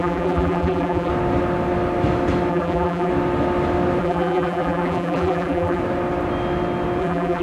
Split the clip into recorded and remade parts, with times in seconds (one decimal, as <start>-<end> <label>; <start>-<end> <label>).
0.0-1.1 remade; 1.1-2.5 recorded; 2.5-3.1 remade; 3.1-4.0 recorded; 4.0-5.8 remade; 5.8-7.0 recorded; 7.0-7.4 remade